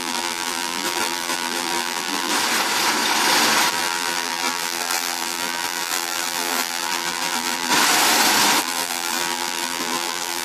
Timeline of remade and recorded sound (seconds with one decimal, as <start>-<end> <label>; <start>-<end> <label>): 0.0-2.3 remade; 2.3-3.7 recorded; 3.7-7.7 remade; 7.7-8.6 recorded; 8.6-10.4 remade